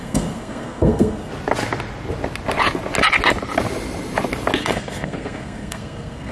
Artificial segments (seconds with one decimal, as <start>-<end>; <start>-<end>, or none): 0.0-1.3; 4.6-6.3